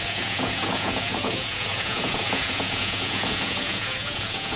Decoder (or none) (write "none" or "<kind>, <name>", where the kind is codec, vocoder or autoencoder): vocoder, Vocos